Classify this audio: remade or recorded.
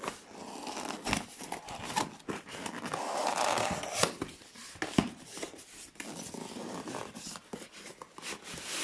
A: recorded